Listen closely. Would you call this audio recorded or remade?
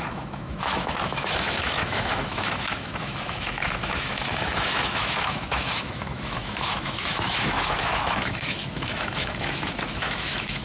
remade